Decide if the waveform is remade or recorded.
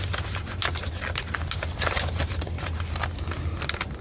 recorded